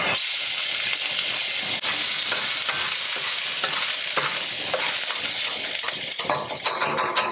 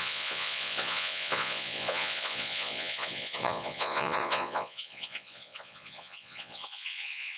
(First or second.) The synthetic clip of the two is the second